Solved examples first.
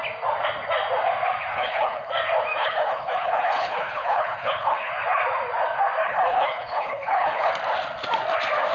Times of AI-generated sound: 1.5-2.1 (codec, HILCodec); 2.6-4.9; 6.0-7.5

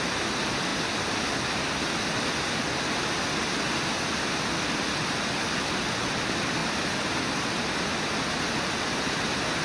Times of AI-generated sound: none

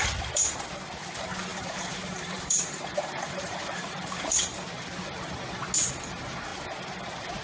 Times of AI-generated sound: 1.5-4.5 (vocoder, BigVGAN v2)

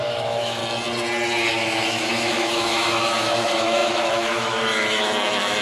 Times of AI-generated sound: 0.0-0.6 (autoencoder, DAC-VAE); 1.5-5.6

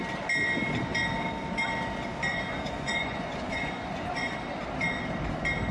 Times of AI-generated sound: 2.3-4.3 (vocoder, Vocos)

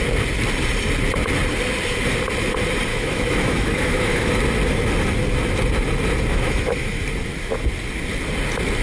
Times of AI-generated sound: 2.9-4.3 (autoencoder, DAC-VAE); 6.3-7.0

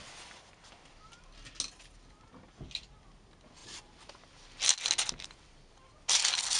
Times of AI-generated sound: none

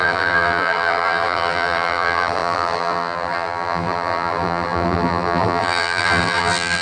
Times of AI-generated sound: 0.0-6.8 (vocoder, BigVGAN v2)